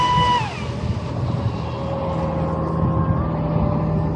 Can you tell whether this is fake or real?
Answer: real